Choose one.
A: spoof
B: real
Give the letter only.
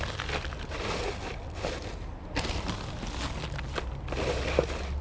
B